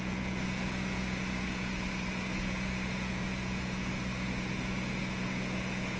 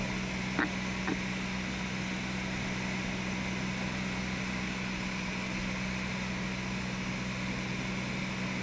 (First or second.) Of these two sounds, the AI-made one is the first